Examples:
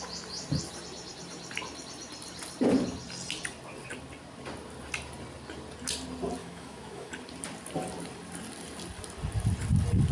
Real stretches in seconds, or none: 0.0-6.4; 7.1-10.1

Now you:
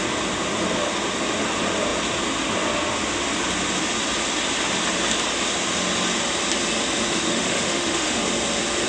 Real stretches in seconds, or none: 0.0-7.1; 8.2-8.9

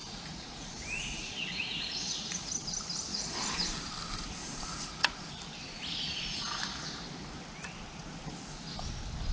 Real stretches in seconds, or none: 2.5-3.1; 3.7-4.4; 5.3-9.3

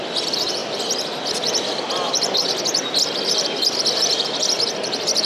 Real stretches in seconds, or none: 0.0-5.3

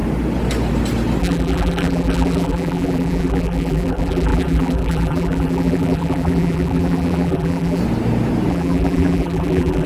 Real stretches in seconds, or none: 0.0-1.2; 7.8-8.5